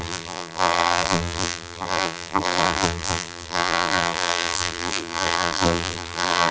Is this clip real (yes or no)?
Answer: no